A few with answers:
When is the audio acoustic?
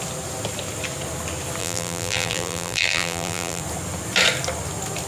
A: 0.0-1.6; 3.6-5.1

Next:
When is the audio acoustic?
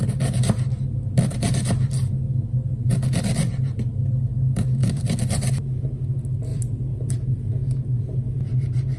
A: 0.0-4.8; 5.5-6.5; 7.1-9.0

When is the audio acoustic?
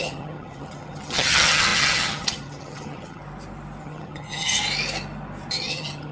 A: 3.2-3.8; 4.6-5.5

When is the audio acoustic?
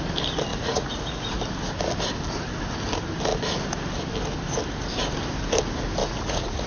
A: 0.0-0.5; 1.4-6.0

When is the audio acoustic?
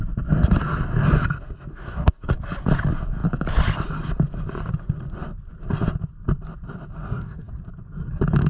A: 0.0-1.7; 2.4-7.0; 7.5-8.5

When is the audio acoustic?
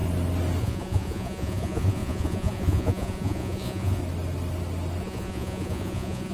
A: 0.0-0.6; 4.0-5.0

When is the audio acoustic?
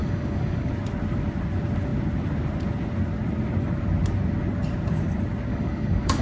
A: 0.7-5.5